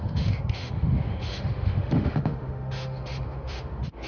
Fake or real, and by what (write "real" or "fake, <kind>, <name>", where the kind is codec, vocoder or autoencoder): fake, autoencoder, DAC-VAE